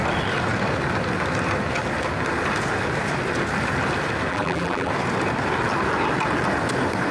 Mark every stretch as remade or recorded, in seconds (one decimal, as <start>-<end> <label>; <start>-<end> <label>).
0.0-4.3 recorded; 4.3-4.9 remade; 4.9-7.1 recorded